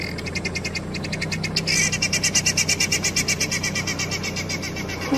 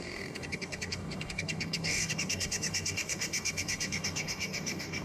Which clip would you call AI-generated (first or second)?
second